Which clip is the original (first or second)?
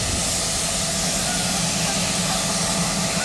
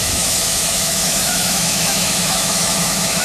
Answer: first